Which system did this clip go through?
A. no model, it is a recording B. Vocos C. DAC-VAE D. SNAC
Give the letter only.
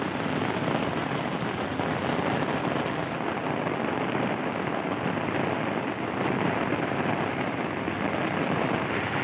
A